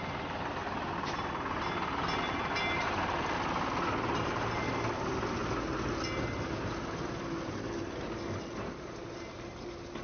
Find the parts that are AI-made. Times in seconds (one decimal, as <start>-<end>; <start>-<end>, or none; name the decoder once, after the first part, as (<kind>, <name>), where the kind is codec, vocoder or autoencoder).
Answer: none